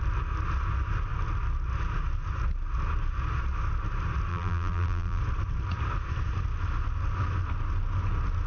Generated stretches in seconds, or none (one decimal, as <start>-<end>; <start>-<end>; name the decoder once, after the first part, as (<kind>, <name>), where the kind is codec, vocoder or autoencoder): 4.3-5.2 (vocoder, BigVGAN v2)